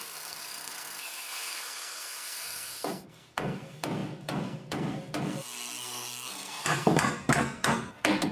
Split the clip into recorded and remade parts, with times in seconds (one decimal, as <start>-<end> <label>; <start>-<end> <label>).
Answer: 0.0-8.3 remade